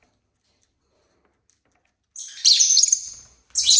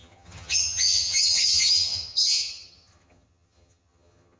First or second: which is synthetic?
second